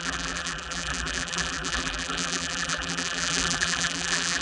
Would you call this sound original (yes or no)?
no